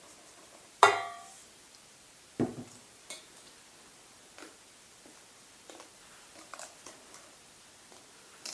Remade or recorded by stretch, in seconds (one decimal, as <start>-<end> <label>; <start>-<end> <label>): 0.0-8.5 recorded